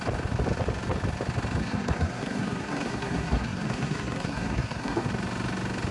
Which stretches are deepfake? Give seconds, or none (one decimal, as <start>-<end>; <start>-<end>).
1.6-5.1